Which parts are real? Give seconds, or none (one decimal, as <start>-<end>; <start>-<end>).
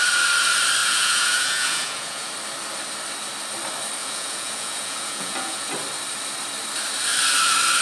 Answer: 0.0-0.8; 2.3-4.0; 5.7-7.8